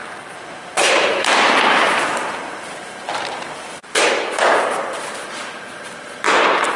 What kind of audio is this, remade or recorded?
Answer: remade